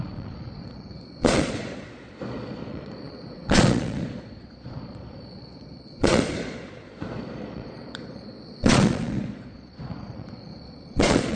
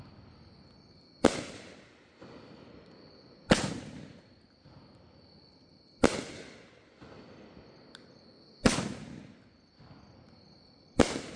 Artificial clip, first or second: first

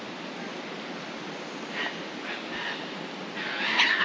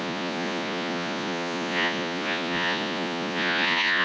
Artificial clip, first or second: second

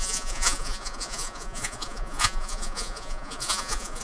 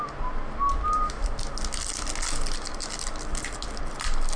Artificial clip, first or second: first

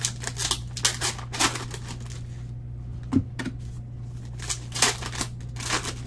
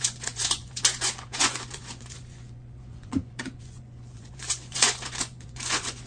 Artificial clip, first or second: second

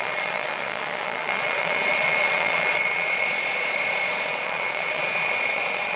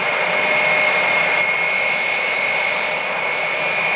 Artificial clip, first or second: first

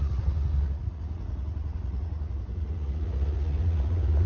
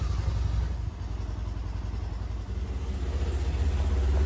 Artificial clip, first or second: first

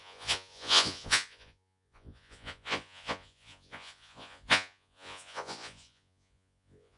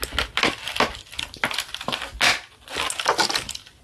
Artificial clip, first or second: first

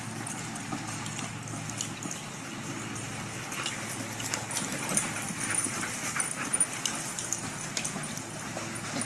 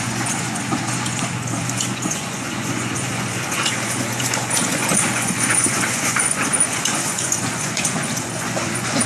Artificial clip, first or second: second